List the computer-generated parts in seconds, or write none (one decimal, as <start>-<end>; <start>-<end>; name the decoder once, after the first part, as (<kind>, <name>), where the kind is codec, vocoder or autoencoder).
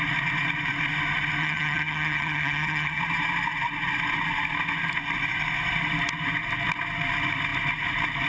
1.4-3.0 (vocoder, HiFi-GAN)